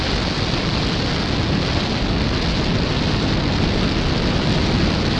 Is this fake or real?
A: real